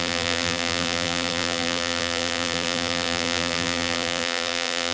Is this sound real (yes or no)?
no